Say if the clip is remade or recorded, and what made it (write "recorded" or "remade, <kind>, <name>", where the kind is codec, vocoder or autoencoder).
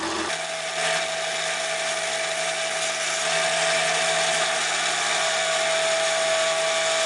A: recorded